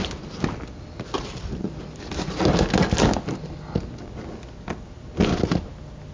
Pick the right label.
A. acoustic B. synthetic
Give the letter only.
A